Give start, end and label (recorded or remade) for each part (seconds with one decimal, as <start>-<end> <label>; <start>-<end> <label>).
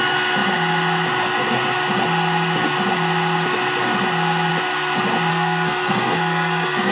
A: 0.0-5.3 recorded; 5.3-6.9 remade